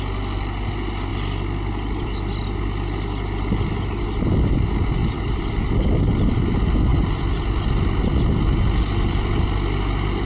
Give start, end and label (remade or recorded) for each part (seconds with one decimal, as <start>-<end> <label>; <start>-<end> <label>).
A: 0.0-5.0 recorded; 5.0-5.6 remade; 5.6-10.3 recorded

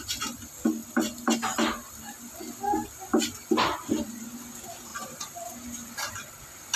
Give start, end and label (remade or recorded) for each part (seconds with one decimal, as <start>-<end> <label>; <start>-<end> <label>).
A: 0.0-4.9 recorded; 4.9-6.1 remade; 6.1-6.8 recorded

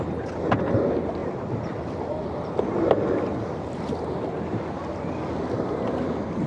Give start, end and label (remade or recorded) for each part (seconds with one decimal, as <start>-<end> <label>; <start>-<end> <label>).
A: 0.0-6.5 recorded

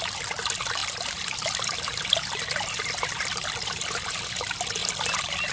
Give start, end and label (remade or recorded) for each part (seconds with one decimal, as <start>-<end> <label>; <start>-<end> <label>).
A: 0.0-0.8 recorded; 0.8-4.1 remade; 4.1-4.8 recorded; 4.8-5.5 remade

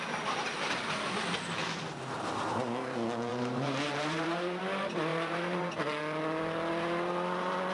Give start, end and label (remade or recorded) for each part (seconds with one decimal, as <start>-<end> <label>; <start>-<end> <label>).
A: 0.0-3.3 recorded; 3.3-4.6 remade; 4.6-5.1 recorded; 5.1-6.0 remade; 6.0-7.7 recorded